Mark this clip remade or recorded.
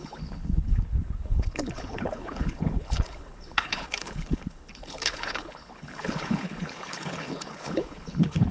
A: remade